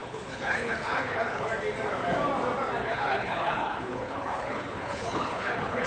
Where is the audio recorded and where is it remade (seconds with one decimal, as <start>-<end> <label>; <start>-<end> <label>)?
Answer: 0.0-1.5 remade; 1.5-2.8 recorded; 2.8-5.9 remade